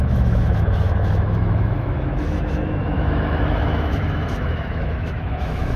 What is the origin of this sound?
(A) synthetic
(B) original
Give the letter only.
A